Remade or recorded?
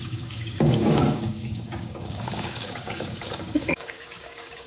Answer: remade